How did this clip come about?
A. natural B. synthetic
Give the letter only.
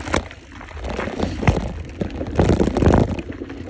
A